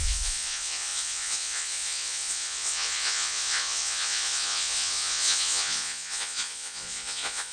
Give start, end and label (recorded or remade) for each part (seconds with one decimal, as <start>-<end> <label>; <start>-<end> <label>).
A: 0.0-7.5 remade